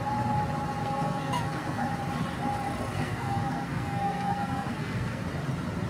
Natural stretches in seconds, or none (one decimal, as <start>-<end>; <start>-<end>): 0.0-0.8; 1.9-2.9; 5.2-5.9